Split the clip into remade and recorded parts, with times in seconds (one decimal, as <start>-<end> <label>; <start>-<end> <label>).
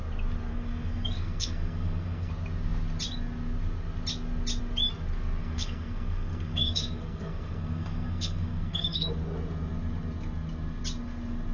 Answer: 0.0-0.5 recorded; 0.5-2.3 remade; 2.3-5.4 recorded; 5.4-9.1 remade; 9.1-11.5 recorded